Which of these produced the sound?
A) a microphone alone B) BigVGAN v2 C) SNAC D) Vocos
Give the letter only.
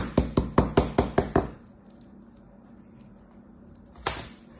A